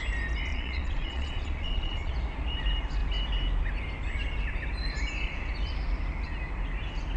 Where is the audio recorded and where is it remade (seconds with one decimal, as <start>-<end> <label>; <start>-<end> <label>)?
0.0-0.5 recorded; 0.5-2.1 remade; 2.1-7.2 recorded